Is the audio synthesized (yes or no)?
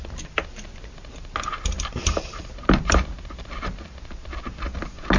no